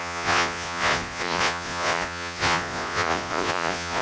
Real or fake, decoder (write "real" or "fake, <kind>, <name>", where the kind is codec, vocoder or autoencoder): fake, vocoder, Vocos